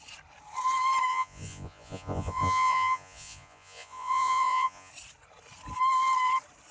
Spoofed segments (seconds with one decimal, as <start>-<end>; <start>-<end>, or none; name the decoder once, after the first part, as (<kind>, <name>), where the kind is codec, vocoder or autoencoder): 1.1-4.9 (vocoder, Vocos)